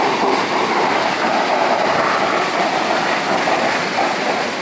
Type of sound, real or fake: real